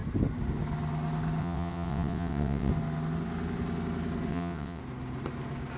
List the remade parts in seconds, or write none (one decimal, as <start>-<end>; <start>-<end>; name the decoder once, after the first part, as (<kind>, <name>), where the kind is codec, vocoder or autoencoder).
1.4-2.7 (vocoder, WaveNeXt); 4.3-4.8